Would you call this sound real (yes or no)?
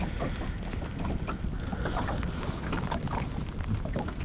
yes